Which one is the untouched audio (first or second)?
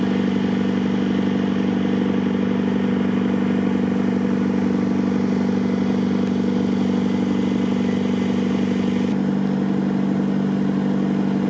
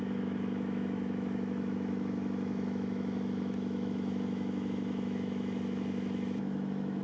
first